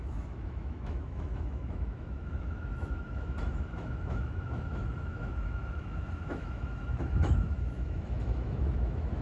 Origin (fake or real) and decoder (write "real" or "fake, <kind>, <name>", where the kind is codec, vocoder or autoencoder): fake, autoencoder, DAC-VAE